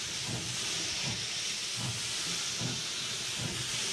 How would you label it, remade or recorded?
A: recorded